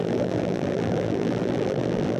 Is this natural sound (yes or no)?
no